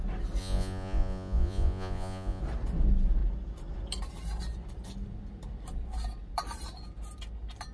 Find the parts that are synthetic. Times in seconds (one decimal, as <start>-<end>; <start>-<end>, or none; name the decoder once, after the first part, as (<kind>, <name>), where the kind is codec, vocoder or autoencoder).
0.4-2.4 (vocoder, Vocos)